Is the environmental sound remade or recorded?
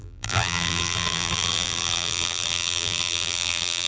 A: remade